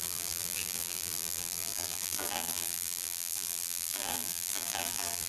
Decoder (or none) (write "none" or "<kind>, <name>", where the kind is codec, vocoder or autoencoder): vocoder, BigVGAN v2